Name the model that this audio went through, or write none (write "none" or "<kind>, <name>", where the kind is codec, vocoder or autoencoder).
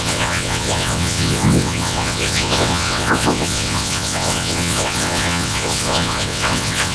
vocoder, WaveNeXt